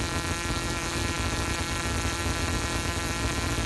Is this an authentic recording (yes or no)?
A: yes